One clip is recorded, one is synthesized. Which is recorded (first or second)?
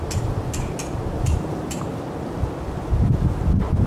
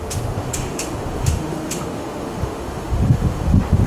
first